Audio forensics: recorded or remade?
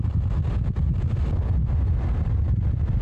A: recorded